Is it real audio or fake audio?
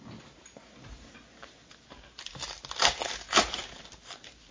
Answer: real